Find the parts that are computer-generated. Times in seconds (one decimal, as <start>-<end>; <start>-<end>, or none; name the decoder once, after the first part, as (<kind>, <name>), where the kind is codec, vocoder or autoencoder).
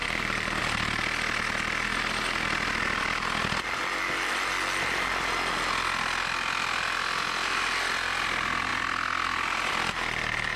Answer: 0.0-0.6 (vocoder, BigVGAN v2)